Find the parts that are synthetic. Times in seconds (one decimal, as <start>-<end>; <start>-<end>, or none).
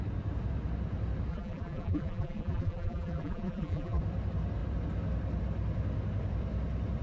1.3-4.0